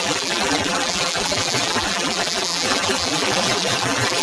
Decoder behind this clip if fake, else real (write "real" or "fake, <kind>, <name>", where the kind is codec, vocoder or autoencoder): fake, vocoder, BigVGAN v2